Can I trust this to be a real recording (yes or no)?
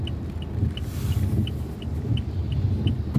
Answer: yes